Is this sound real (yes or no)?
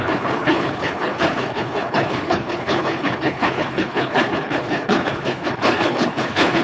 no